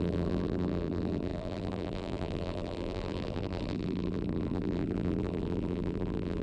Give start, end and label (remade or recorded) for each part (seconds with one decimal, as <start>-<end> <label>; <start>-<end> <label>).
0.0-6.4 remade